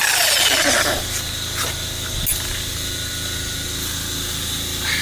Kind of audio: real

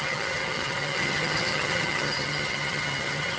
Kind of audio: fake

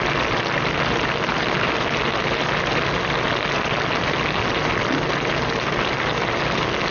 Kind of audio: real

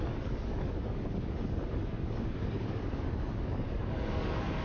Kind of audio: fake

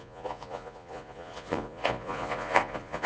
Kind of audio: fake